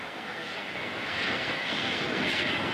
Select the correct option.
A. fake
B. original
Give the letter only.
A